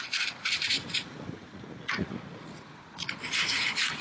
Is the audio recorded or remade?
remade